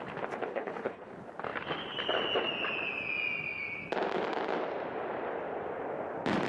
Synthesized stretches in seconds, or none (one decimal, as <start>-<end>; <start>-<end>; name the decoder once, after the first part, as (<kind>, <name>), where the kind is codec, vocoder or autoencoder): 0.5-1.1 (codec, HILCodec)